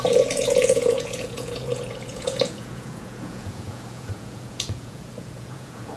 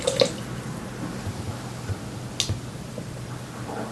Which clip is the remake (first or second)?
first